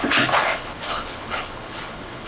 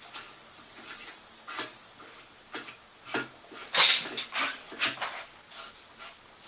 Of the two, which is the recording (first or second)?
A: second